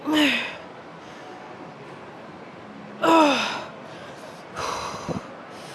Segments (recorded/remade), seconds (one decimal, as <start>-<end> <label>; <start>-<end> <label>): 0.0-5.7 recorded